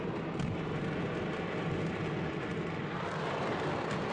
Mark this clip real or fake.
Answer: real